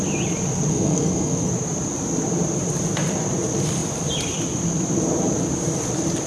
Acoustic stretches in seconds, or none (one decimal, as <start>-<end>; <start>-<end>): 0.0-0.7; 1.5-6.3

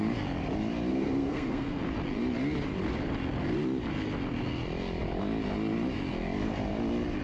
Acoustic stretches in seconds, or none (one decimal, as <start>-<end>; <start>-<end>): 0.0-0.9; 1.8-7.2

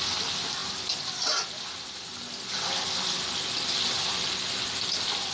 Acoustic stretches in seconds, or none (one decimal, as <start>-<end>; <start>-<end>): 0.0-5.3

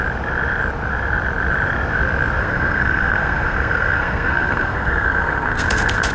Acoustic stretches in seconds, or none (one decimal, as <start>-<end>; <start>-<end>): 0.0-2.4

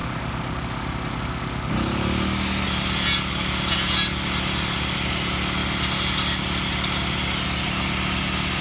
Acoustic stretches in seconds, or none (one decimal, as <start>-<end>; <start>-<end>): 0.0-8.6